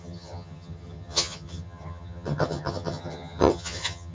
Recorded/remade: remade